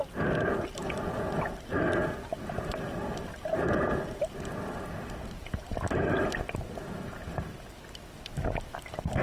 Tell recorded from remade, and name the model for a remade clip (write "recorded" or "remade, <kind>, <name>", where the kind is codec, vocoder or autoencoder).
recorded